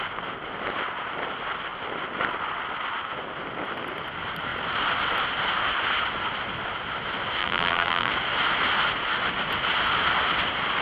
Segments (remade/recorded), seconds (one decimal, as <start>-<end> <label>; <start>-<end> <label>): 0.0-7.4 recorded; 7.4-8.1 remade; 8.1-10.8 recorded